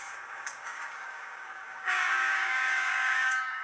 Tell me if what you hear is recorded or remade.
remade